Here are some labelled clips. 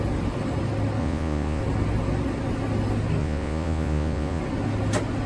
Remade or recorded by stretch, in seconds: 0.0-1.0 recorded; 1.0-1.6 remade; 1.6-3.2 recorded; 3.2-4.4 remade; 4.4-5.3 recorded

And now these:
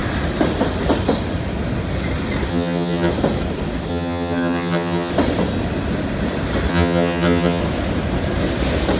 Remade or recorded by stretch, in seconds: 0.0-2.5 recorded; 2.5-3.1 remade; 3.1-3.9 recorded; 3.9-5.1 remade; 5.1-6.7 recorded; 6.7-7.6 remade; 7.6-9.0 recorded

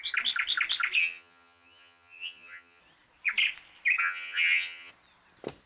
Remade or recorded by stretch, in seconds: 0.0-1.0 recorded; 1.0-2.8 remade; 2.8-4.0 recorded; 4.0-4.9 remade; 4.9-5.7 recorded

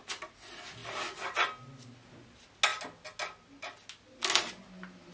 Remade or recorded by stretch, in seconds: 0.0-5.1 recorded

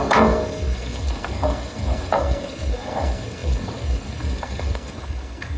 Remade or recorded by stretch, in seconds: 0.0-5.6 remade

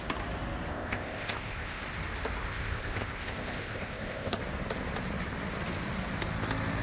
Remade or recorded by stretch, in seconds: 0.0-0.7 recorded; 0.7-1.8 remade; 1.8-2.4 recorded; 2.4-4.4 remade; 4.4-6.8 recorded